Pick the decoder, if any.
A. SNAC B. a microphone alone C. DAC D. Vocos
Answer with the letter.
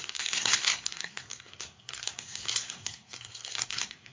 A